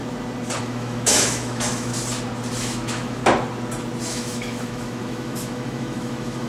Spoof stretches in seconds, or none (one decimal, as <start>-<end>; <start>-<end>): 0.6-1.9; 2.6-3.2; 4.0-6.5